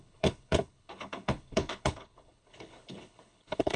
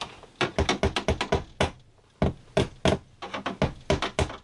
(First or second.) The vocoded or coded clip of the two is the first